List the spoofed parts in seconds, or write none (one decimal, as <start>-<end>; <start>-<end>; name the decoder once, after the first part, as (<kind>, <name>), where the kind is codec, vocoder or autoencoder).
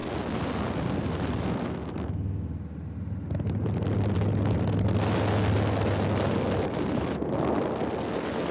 none